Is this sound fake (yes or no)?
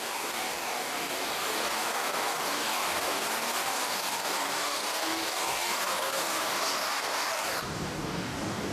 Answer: yes